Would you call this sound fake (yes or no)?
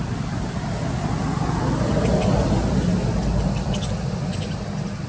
no